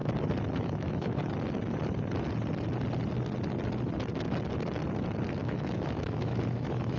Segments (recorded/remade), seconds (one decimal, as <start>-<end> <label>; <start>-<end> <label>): 0.0-0.6 recorded; 0.6-1.2 remade; 1.2-5.4 recorded; 5.4-7.0 remade